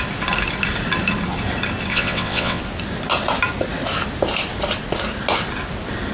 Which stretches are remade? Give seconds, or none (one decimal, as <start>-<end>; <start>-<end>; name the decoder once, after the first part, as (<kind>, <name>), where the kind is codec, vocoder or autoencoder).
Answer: 1.9-2.6 (vocoder, WaveNeXt)